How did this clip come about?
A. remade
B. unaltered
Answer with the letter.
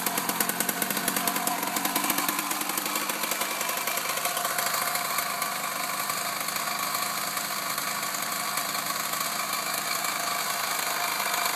B